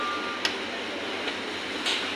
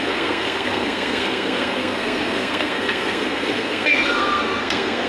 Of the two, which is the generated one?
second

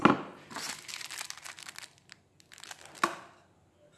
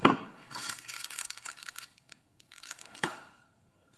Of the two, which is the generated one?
second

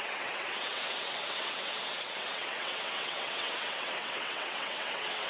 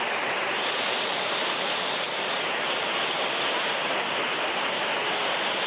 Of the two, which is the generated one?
first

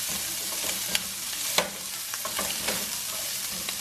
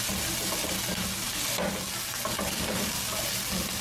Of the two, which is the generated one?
first